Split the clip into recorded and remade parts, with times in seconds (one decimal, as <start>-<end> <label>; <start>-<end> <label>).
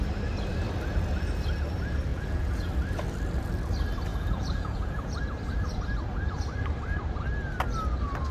0.0-2.1 recorded; 2.1-2.7 remade; 2.7-4.1 recorded; 4.1-5.2 remade; 5.2-8.3 recorded